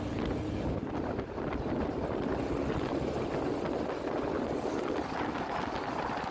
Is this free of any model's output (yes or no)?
yes